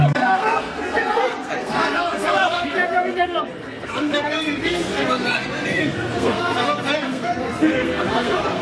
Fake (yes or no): yes